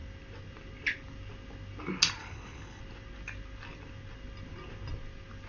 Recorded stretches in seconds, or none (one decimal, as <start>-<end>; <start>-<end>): 0.0-2.2; 2.8-5.5